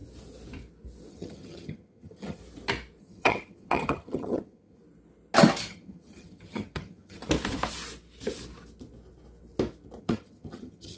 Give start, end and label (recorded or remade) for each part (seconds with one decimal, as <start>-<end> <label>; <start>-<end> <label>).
0.0-1.1 recorded; 1.1-2.4 remade; 2.4-3.0 recorded; 3.0-4.8 remade; 4.8-5.7 recorded; 5.7-7.2 remade; 7.2-10.0 recorded; 10.0-11.0 remade